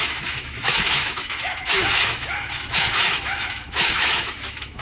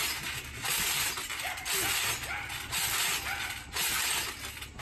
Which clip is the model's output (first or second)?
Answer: first